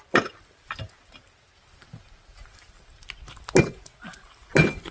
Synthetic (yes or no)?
no